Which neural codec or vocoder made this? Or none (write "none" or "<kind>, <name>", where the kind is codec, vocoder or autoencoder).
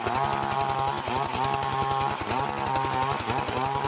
none